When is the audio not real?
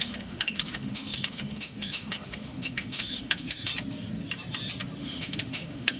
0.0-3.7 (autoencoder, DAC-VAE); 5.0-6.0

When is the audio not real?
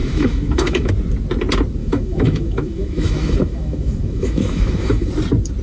0.0-0.9 (autoencoder, DAC-VAE); 1.8-5.1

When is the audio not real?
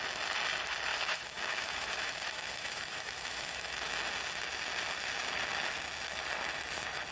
0.9-3.9 (autoencoder, DAC-VAE)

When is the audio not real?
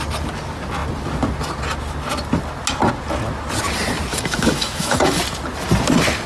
4.1-5.2 (autoencoder, DAC-VAE)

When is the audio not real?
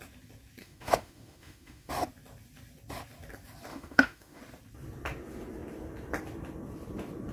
0.6-1.9 (autoencoder, DAC-VAE); 3.7-4.4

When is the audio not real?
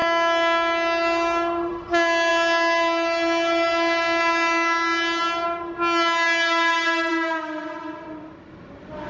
none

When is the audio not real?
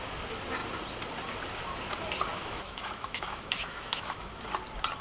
2.3-4.3 (autoencoder, DAC-VAE)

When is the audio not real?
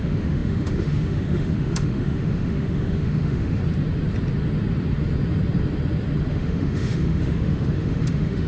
0.0-3.6 (autoencoder, DAC-VAE); 6.3-8.5